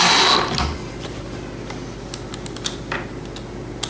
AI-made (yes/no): no